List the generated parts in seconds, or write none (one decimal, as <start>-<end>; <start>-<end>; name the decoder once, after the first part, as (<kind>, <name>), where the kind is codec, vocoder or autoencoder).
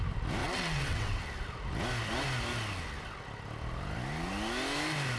0.4-1.2 (vocoder, WaveNeXt)